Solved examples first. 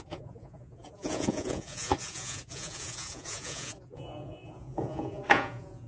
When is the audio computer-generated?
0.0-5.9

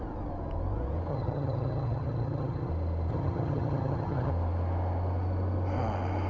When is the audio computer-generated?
1.1-2.7; 3.1-4.3